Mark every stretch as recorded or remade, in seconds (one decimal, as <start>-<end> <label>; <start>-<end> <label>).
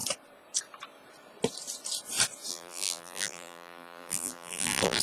0.0-2.5 recorded; 2.5-5.0 remade